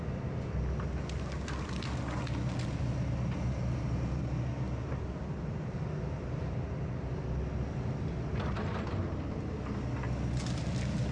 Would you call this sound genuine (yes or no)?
yes